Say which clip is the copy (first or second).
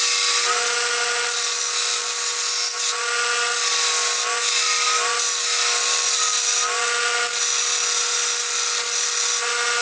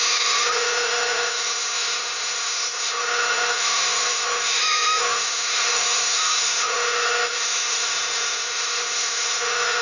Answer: second